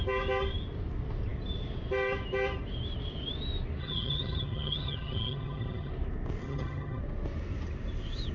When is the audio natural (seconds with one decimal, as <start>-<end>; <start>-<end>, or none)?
0.0-3.8; 5.9-6.4; 7.0-8.3